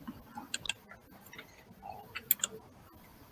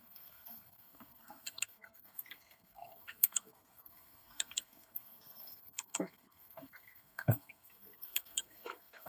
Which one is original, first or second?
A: first